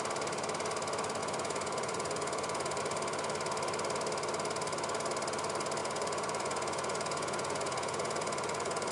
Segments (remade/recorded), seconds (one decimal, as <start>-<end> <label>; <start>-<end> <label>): 0.0-1.2 recorded; 1.2-2.8 remade; 2.8-5.8 recorded; 5.8-8.9 remade